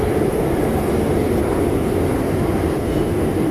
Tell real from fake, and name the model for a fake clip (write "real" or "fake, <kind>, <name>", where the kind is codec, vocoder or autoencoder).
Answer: fake, vocoder, BigVGAN v2